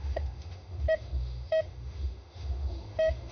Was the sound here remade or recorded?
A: remade